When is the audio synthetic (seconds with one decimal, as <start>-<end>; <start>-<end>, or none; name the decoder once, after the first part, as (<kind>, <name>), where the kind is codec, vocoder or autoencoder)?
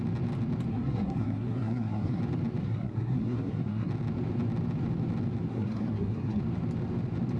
0.7-2.2 (codec, SNAC); 2.6-3.9; 5.5-6.4